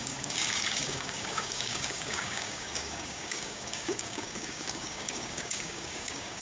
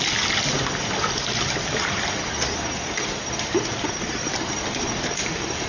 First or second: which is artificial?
first